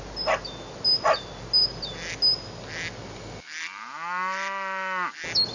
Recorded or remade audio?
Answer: recorded